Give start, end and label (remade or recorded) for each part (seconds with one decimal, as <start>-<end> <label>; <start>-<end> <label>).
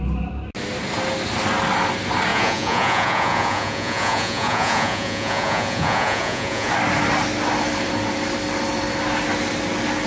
0.0-2.3 recorded; 2.3-6.7 remade; 6.7-10.1 recorded